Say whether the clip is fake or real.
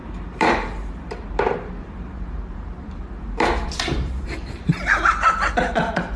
fake